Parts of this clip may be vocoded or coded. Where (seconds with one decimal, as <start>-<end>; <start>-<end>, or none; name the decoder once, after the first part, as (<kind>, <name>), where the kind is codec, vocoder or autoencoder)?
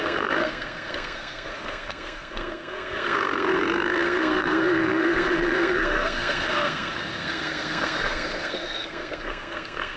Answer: 0.0-10.0 (codec, SNAC)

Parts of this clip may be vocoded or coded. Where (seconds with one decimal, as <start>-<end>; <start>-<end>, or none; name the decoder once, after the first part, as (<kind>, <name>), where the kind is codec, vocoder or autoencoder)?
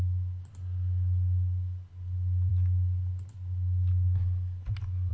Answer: none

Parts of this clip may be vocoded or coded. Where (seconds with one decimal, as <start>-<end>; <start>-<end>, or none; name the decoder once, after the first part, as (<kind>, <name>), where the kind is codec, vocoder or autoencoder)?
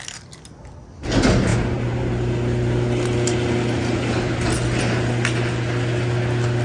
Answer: none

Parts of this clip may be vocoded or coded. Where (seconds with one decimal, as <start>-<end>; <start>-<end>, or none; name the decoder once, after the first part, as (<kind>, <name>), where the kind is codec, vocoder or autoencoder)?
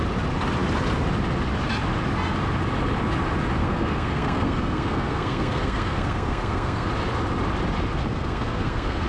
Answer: 3.6-6.9 (codec, SNAC); 8.0-9.1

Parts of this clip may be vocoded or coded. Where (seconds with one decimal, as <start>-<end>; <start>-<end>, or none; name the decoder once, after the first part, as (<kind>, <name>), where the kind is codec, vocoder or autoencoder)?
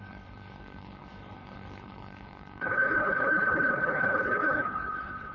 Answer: 0.0-5.3 (codec, HILCodec)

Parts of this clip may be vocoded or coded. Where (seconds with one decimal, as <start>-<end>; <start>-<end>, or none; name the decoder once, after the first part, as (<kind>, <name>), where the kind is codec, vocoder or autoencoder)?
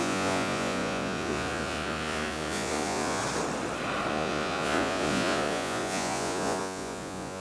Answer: 0.0-3.2 (vocoder, Vocos); 4.1-7.4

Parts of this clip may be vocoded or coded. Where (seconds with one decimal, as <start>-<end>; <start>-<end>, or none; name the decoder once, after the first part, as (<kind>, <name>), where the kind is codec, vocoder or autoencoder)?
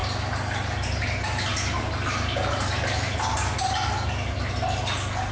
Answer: none